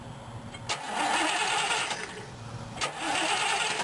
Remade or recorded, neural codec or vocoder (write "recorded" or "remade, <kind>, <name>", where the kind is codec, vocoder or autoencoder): recorded